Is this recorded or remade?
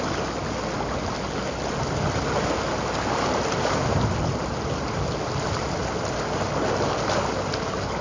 recorded